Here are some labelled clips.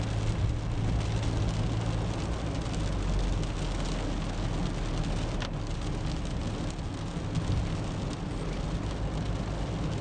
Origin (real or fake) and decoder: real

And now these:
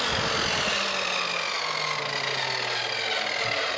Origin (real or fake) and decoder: real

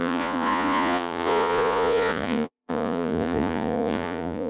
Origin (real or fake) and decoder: fake, vocoder, Vocos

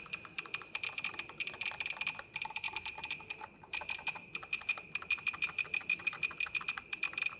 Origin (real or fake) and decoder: fake, vocoder, BigVGAN v2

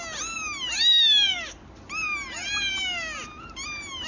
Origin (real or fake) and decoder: real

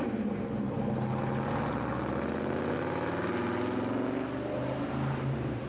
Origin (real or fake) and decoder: real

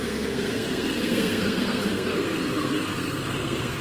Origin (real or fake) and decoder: fake, codec, SNAC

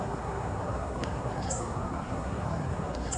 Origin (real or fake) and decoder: fake, codec, SNAC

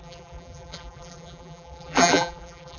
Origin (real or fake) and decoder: fake, vocoder, BigVGAN v2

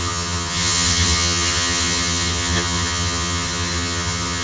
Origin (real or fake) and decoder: fake, vocoder, HiFi-GAN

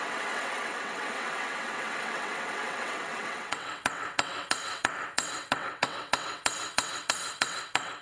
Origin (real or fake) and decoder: fake, vocoder, WaveNeXt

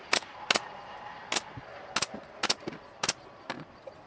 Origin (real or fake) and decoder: real